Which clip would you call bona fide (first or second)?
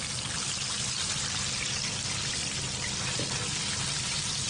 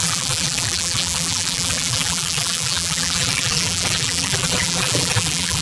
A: first